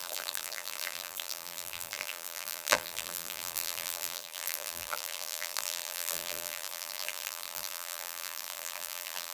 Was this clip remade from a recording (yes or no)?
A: yes